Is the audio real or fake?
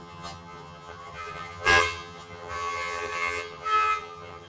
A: fake